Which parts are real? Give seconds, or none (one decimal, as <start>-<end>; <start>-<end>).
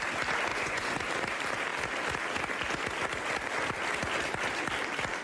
0.0-0.5; 1.0-5.2